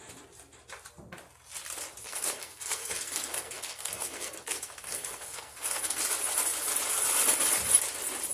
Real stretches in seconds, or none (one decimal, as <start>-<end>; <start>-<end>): 0.0-2.0; 6.0-8.3